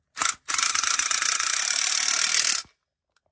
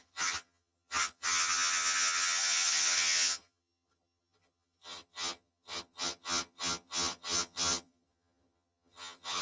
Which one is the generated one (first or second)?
second